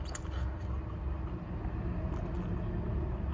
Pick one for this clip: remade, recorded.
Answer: recorded